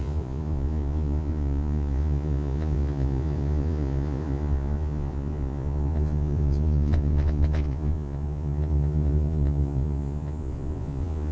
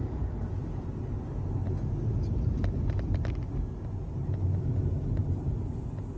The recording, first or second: second